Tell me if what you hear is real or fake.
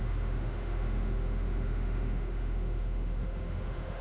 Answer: fake